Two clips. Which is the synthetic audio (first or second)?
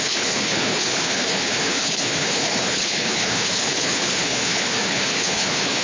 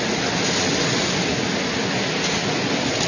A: first